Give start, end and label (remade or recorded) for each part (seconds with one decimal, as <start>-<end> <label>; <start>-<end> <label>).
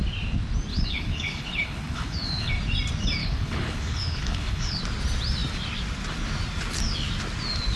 0.0-0.7 recorded; 0.7-2.5 remade; 2.5-3.2 recorded; 3.2-4.8 remade; 4.8-7.8 recorded